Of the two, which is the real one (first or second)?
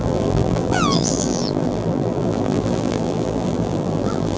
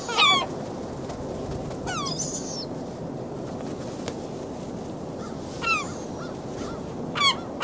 second